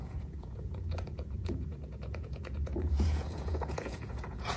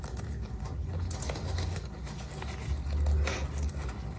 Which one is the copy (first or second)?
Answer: first